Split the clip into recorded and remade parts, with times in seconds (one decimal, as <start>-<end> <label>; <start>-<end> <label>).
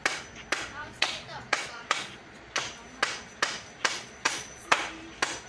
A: 0.0-0.8 recorded; 0.8-2.4 remade; 2.4-3.8 recorded; 3.8-4.8 remade; 4.8-5.5 recorded